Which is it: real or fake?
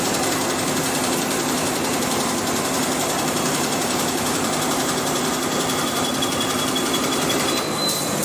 fake